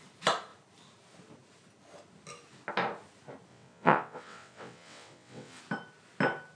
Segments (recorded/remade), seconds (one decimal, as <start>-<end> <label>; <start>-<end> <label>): 0.0-3.5 recorded; 3.5-5.6 remade; 5.6-6.6 recorded